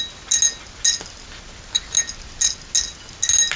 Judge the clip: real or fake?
real